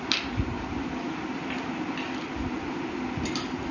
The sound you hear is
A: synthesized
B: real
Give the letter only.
B